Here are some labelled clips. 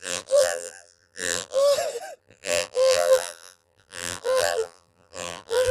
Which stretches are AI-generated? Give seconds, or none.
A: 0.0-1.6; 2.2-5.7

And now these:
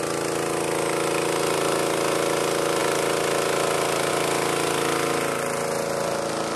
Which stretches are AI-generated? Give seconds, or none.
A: none